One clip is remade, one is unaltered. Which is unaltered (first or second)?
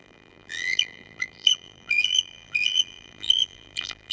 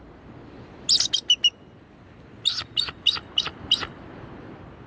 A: second